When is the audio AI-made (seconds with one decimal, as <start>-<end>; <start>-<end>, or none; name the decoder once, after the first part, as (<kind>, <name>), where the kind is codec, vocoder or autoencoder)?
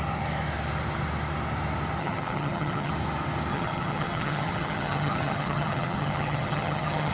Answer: 2.0-2.9 (vocoder, HiFi-GAN); 3.5-7.1